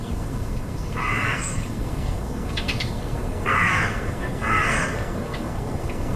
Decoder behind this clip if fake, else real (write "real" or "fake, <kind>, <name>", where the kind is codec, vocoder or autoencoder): fake, codec, SNAC